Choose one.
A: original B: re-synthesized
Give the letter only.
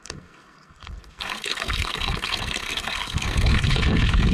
B